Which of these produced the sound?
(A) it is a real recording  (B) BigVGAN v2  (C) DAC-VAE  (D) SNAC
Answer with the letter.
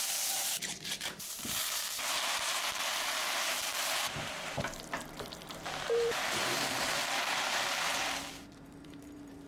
B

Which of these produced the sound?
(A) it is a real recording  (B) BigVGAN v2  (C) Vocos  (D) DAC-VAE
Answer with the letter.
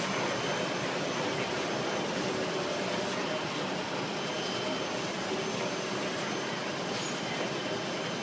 A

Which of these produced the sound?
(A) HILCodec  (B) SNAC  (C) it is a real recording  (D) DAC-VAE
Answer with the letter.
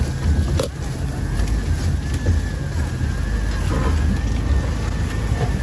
C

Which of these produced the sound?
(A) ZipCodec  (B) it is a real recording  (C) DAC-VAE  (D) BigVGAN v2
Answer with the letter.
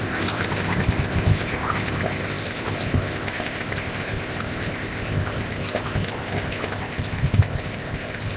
A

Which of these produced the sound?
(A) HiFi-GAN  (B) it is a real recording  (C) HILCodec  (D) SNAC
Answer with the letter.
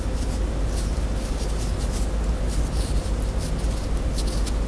B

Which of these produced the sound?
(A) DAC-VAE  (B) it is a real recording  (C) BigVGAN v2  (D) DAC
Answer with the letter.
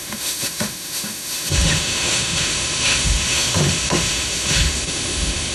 A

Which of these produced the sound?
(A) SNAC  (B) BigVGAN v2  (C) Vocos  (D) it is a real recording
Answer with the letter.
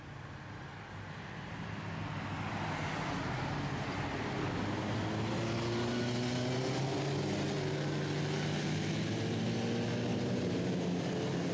D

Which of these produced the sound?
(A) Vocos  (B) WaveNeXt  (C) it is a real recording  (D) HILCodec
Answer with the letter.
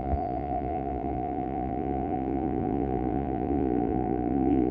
A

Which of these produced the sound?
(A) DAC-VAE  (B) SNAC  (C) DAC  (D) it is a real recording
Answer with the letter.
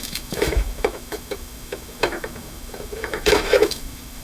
A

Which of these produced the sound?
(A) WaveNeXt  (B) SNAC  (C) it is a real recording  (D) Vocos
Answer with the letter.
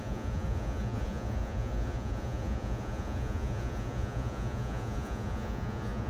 D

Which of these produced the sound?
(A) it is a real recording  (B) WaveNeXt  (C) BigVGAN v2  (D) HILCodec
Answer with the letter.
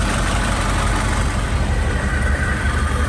C